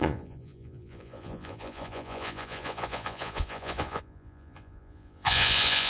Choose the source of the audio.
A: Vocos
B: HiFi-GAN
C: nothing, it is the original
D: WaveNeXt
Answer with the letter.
A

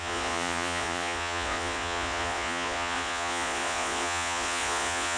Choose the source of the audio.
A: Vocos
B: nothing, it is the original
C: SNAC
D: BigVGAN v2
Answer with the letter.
A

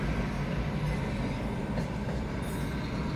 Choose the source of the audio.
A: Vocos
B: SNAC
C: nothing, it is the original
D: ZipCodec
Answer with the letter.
C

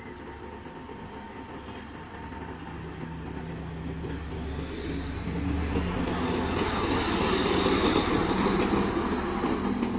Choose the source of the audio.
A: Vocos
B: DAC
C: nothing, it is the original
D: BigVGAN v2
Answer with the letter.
C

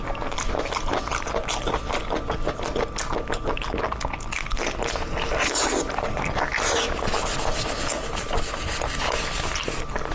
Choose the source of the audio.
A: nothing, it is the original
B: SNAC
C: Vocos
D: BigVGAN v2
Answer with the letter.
A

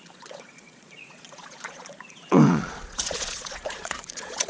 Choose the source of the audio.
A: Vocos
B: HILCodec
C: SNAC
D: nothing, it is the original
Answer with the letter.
A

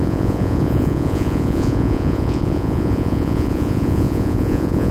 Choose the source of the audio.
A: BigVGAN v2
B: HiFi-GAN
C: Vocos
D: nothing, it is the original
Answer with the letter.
C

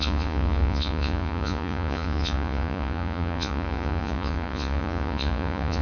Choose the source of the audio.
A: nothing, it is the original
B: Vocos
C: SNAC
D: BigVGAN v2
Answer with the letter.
B